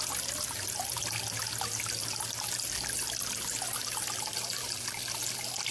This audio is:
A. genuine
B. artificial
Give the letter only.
A